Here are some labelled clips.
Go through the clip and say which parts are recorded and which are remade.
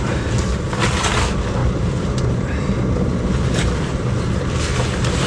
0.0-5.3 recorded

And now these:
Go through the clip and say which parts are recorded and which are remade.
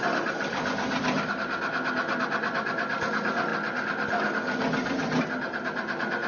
0.0-6.3 recorded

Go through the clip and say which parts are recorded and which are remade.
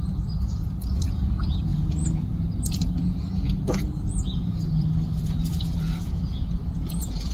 0.0-7.3 remade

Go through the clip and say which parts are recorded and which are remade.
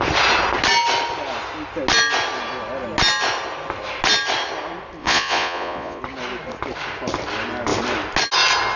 0.0-5.0 recorded; 5.0-6.0 remade; 6.0-8.8 recorded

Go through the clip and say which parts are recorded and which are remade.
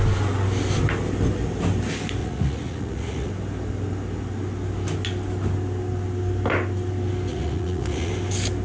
0.0-2.2 recorded; 2.2-3.3 remade; 3.3-7.3 recorded; 7.3-8.1 remade; 8.1-8.6 recorded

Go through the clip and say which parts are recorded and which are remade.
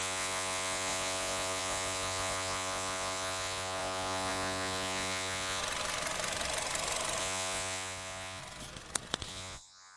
0.0-5.6 remade; 5.6-7.2 recorded; 7.2-8.4 remade; 8.4-9.3 recorded; 9.3-10.0 remade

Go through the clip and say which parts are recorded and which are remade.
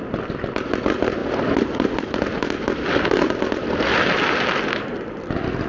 0.0-5.7 recorded